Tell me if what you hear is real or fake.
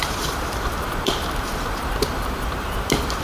fake